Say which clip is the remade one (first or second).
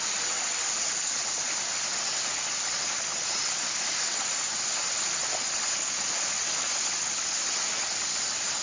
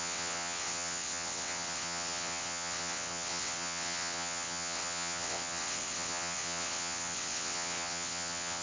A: second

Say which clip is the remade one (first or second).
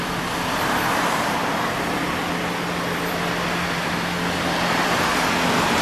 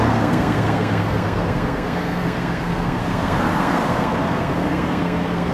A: second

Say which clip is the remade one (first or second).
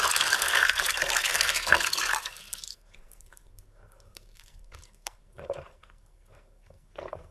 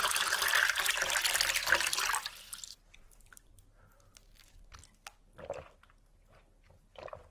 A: first